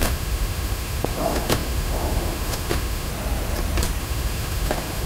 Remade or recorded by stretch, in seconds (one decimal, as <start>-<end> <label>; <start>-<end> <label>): 0.0-3.1 remade; 3.1-4.0 recorded; 4.0-5.1 remade